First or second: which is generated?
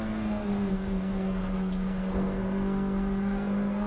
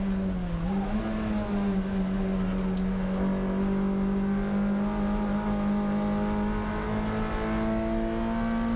first